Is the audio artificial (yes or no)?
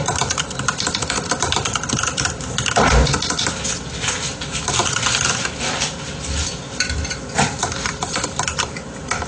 no